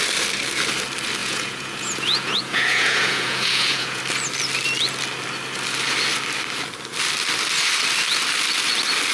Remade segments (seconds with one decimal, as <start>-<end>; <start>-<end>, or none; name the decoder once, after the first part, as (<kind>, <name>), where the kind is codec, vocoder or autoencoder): 1.2-4.0 (vocoder, Vocos)